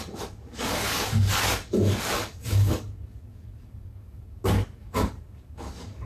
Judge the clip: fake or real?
fake